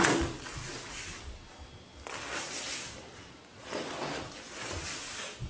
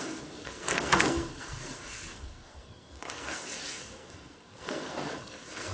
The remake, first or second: second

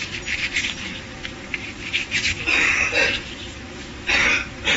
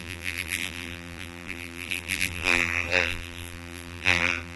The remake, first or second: second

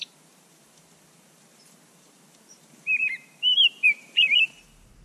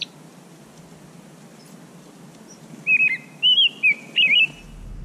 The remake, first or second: first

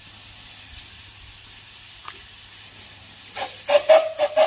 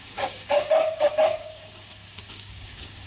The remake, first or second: second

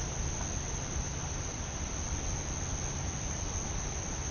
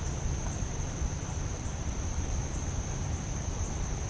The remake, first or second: second